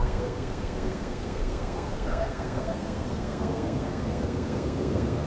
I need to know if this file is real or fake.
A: fake